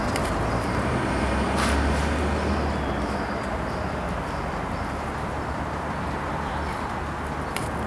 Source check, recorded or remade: recorded